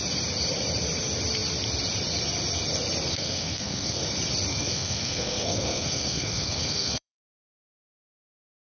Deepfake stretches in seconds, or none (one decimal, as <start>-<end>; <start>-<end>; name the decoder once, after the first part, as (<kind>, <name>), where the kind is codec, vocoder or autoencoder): 3.1-4.1 (codec, SNAC); 4.5-7.8